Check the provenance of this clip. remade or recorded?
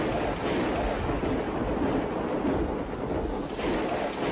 recorded